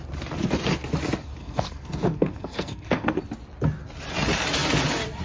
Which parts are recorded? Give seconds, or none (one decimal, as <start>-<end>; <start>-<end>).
0.0-1.4; 3.2-5.2